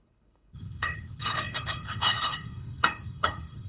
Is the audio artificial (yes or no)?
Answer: yes